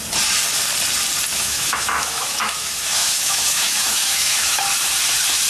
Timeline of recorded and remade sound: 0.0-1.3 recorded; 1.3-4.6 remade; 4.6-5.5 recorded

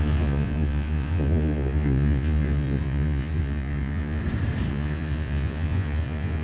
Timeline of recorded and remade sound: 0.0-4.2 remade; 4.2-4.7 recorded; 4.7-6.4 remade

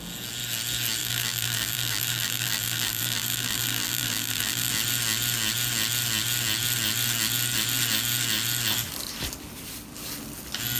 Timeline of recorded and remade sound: 0.0-1.0 recorded; 1.0-4.7 remade; 4.7-10.8 recorded